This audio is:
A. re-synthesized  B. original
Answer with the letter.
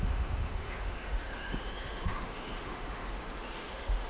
A